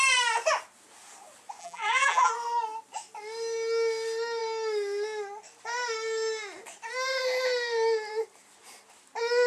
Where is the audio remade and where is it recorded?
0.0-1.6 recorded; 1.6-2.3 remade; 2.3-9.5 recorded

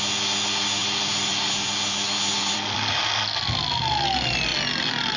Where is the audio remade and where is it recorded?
0.0-0.8 recorded; 0.8-1.5 remade; 1.5-2.4 recorded; 2.4-3.1 remade; 3.1-5.2 recorded

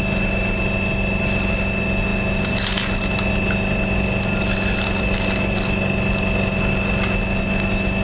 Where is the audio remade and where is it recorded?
0.0-8.0 recorded

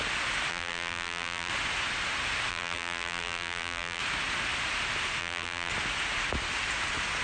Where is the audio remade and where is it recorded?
0.0-0.5 recorded; 0.5-1.5 remade; 1.5-2.5 recorded; 2.5-4.0 remade; 4.0-5.2 recorded; 5.2-5.7 remade; 5.7-7.2 recorded

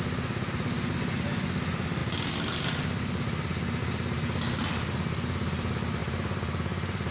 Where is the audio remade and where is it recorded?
0.0-6.0 recorded; 6.0-7.1 remade

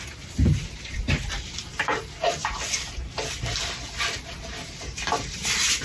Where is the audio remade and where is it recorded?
0.0-2.4 remade; 2.4-4.7 recorded; 4.7-5.8 remade

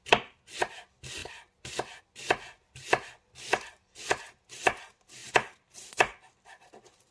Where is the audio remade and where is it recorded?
0.0-1.2 recorded; 1.2-2.0 remade; 2.0-5.2 recorded; 5.2-7.1 remade